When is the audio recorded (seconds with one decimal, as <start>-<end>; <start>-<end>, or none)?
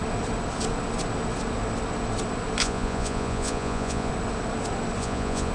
0.0-2.6; 4.1-5.0